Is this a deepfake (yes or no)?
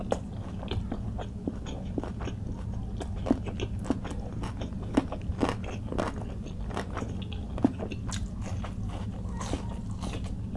no